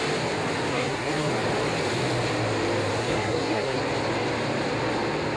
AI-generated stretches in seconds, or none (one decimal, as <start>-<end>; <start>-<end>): 0.7-1.3; 3.0-3.8

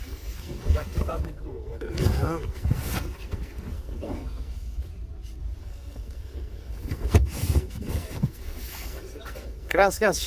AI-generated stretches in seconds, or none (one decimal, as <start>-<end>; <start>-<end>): 0.0-4.9; 5.6-10.3

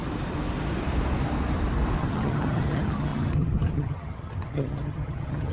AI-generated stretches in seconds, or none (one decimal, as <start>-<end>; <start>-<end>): 2.0-5.5

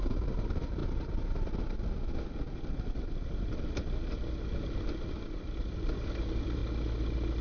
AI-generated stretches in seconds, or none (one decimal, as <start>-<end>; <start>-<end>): 0.0-0.8; 5.1-6.6

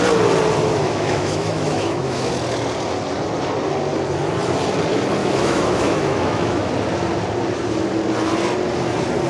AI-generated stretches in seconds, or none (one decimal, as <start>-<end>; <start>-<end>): 0.7-2.3; 5.2-6.7

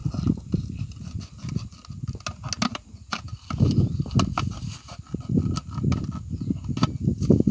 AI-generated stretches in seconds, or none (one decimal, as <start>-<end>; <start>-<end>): 0.0-1.9; 3.3-6.2

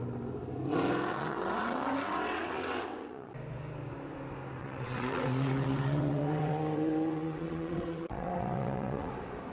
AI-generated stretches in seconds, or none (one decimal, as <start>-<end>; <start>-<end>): 1.1-3.3; 4.6-9.1

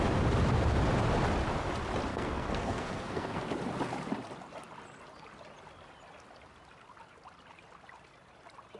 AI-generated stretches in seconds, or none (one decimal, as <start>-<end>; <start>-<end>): 2.1-3.4